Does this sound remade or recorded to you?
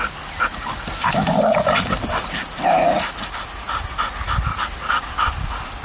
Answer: recorded